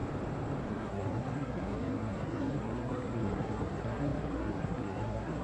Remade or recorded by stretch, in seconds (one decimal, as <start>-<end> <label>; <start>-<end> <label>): 0.0-0.7 recorded; 0.7-5.4 remade